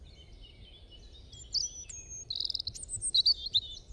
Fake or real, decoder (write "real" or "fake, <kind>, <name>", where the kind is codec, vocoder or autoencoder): real